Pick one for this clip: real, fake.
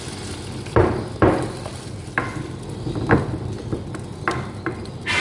real